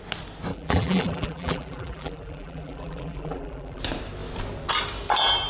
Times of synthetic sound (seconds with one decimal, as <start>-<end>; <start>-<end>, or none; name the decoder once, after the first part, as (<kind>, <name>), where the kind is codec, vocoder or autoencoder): 0.5-3.8 (vocoder, BigVGAN v2)